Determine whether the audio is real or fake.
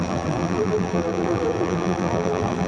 fake